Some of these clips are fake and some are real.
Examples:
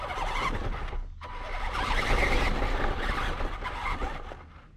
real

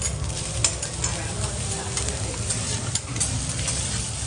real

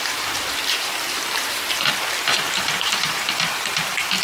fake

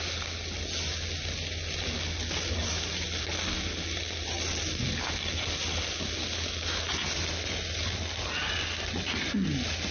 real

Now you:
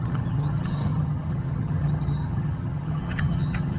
fake